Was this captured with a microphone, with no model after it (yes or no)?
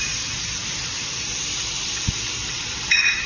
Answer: no